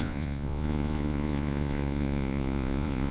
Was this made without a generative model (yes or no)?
no